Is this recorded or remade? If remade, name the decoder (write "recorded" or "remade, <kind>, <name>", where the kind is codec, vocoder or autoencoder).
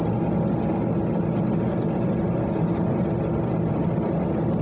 recorded